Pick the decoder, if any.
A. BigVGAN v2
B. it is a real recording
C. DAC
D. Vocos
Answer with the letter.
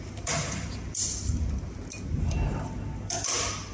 B